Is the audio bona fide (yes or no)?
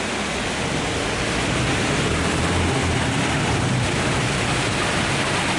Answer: yes